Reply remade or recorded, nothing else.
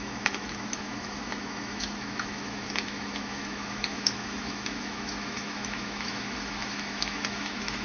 remade